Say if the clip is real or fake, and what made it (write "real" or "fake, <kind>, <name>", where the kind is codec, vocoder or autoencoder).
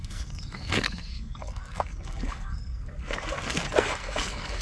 fake, codec, SNAC